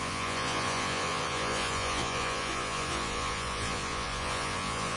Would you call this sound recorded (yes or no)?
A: no